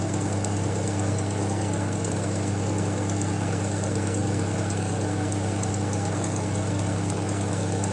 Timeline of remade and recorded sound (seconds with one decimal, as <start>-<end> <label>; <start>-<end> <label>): 0.0-7.9 remade